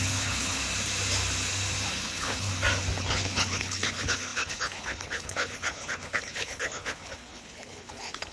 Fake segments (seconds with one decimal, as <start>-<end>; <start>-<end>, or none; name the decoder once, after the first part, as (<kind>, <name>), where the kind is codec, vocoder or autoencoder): 0.0-0.6 (codec, HILCodec); 1.9-2.5; 3.0-8.3